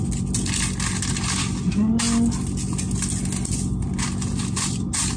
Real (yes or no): yes